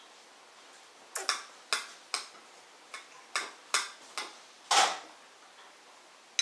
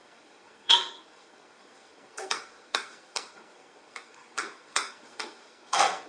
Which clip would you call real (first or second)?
first